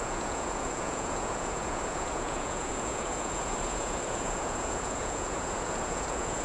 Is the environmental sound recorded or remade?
remade